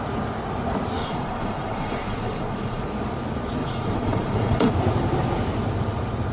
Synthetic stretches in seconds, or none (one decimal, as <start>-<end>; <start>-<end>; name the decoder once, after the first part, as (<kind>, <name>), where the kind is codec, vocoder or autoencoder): 1.0-2.8 (vocoder, Vocos); 3.6-4.7